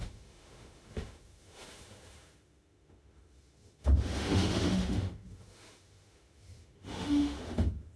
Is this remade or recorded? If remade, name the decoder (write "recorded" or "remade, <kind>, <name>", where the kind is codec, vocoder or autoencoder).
remade, autoencoder, DAC-VAE